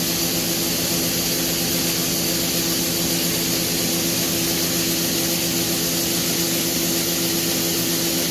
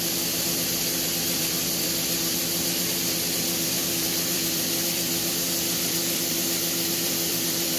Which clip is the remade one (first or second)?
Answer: second